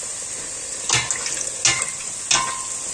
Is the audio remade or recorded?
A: recorded